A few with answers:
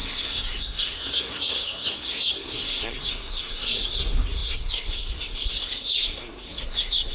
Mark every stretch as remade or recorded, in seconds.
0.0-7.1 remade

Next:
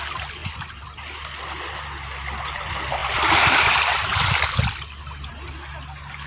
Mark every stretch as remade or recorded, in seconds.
0.0-0.4 recorded; 0.4-1.4 remade; 1.4-3.0 recorded; 3.0-5.3 remade; 5.3-6.3 recorded

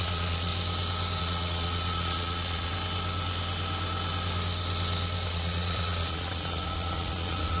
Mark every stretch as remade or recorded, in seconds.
0.0-0.5 remade; 0.5-1.2 recorded; 1.2-2.7 remade; 2.7-5.3 recorded; 5.3-7.6 remade

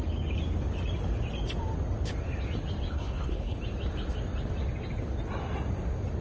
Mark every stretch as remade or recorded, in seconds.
0.0-2.9 recorded; 2.9-3.6 remade; 3.6-6.2 recorded

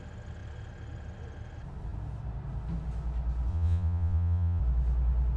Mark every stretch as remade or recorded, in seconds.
0.0-3.5 recorded; 3.5-4.6 remade; 4.6-5.4 recorded

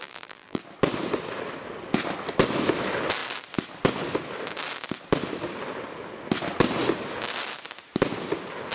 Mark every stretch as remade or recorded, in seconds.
0.0-0.6 remade; 0.6-8.7 recorded

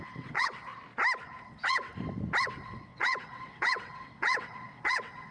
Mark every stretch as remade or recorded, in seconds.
0.0-0.7 remade; 0.7-1.4 recorded; 1.4-1.9 remade; 1.9-2.4 recorded; 2.4-5.3 remade